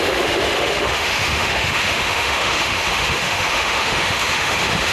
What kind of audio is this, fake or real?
fake